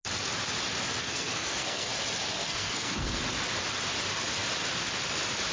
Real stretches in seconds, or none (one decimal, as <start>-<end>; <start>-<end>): 0.0-1.0; 1.9-2.3; 3.2-5.5